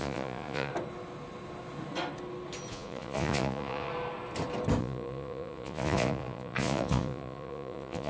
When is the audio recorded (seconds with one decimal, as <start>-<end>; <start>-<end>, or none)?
0.7-2.7; 3.9-4.8